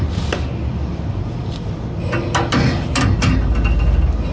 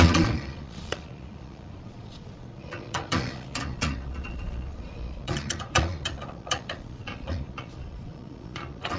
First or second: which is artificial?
second